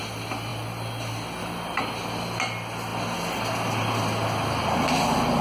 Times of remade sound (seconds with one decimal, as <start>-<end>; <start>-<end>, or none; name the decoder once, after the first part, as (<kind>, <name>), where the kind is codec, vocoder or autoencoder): none